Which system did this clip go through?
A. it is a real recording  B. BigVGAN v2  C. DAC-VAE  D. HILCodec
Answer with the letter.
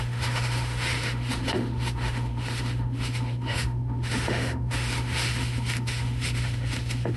C